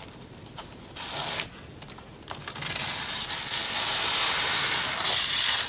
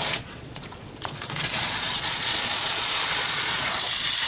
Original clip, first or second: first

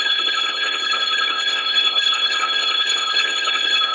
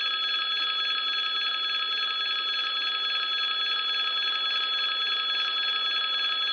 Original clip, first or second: second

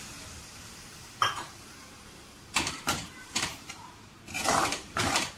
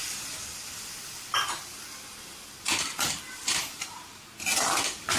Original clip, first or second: second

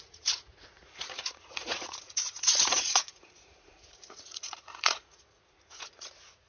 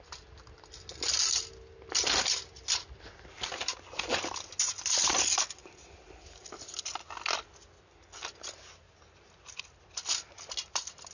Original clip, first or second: second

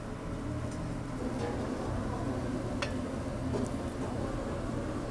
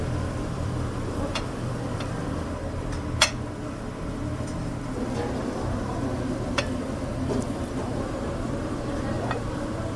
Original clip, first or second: first